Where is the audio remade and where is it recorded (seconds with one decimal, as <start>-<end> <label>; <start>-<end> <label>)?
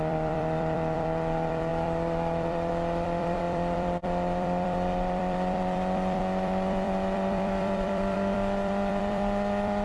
0.0-9.8 remade